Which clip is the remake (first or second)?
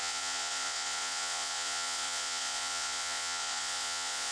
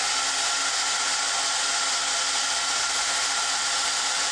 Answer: first